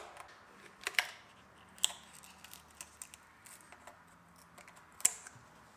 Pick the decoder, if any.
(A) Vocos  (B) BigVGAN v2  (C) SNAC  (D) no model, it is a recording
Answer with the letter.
D